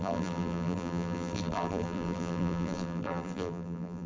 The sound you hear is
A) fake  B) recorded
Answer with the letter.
A